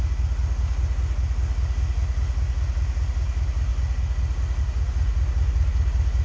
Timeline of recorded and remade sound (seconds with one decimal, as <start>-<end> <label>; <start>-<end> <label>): 0.0-6.2 recorded